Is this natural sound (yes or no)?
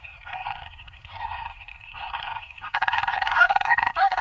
no